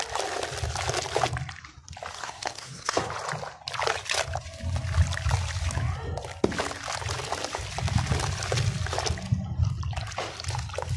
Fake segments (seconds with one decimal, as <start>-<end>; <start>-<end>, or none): 2.2-3.1